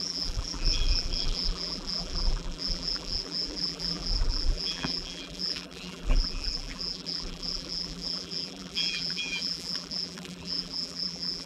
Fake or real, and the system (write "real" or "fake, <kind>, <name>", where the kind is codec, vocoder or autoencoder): fake, vocoder, BigVGAN v2